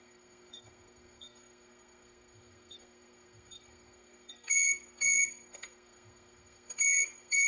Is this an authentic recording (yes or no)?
no